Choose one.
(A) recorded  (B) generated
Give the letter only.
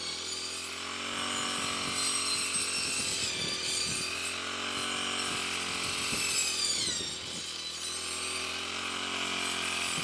A